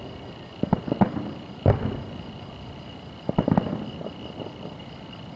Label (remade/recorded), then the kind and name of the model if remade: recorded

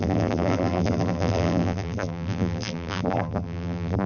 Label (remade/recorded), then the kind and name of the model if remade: remade, vocoder, BigVGAN v2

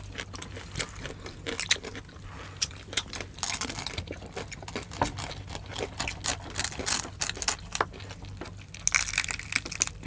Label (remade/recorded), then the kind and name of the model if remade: recorded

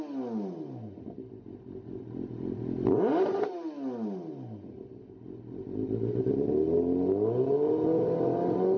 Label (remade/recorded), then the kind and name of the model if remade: recorded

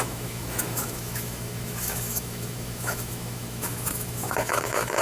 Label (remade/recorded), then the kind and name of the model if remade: remade, autoencoder, DAC-VAE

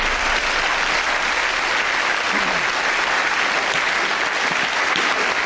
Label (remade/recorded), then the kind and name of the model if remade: recorded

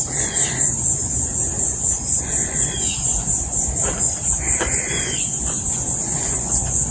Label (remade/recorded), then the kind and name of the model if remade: remade, vocoder, Vocos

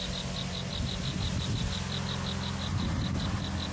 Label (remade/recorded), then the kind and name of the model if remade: recorded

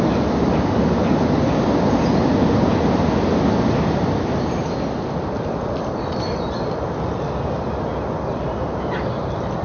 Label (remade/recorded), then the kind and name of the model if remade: recorded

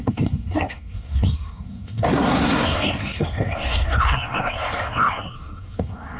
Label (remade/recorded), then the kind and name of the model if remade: remade, codec, SNAC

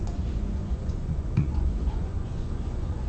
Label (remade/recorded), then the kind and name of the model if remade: remade, vocoder, Vocos